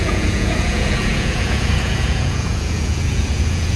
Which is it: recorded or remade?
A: remade